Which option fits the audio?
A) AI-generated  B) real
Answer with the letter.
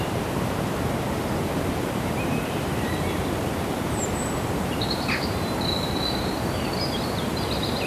A